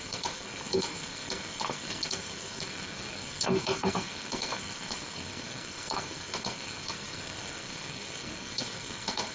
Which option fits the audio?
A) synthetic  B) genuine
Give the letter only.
A